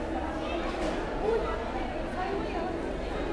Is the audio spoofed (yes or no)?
no